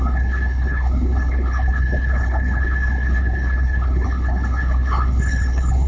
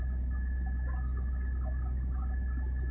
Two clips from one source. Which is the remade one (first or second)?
first